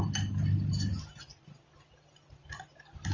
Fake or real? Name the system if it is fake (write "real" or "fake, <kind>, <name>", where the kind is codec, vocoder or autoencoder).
real